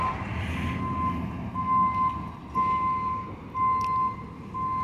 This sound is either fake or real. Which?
real